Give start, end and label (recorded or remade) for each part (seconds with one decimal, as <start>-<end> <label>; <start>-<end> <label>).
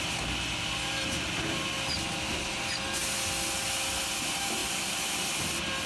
0.0-5.9 recorded